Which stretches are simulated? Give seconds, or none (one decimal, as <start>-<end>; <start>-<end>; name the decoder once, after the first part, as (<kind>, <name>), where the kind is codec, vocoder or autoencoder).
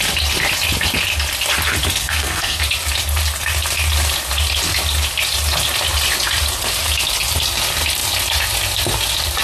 2.0-2.6 (codec, SNAC)